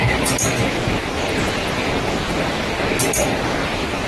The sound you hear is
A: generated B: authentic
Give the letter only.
B